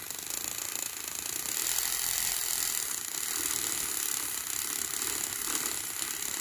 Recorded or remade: recorded